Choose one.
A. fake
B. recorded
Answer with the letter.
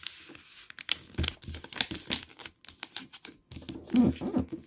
B